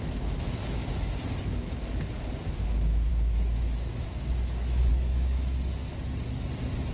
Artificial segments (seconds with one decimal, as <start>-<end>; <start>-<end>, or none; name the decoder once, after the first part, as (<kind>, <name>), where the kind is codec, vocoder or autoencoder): 0.0-0.8 (autoencoder, DAC-VAE); 2.4-6.1